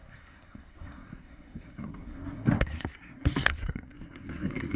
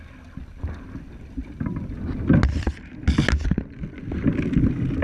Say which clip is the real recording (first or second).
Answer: second